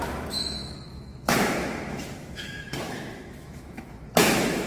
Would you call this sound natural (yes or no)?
no